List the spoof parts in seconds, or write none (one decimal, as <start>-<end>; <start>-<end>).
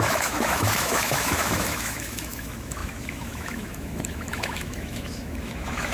0.0-5.9